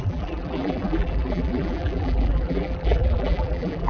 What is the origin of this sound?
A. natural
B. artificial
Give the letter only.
B